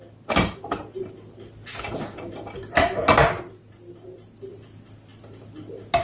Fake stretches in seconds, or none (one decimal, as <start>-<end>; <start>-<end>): none